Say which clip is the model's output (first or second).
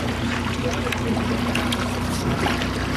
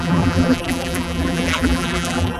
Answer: second